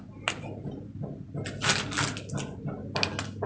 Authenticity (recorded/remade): recorded